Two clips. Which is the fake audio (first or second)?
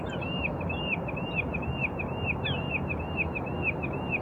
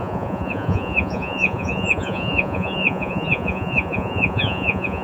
second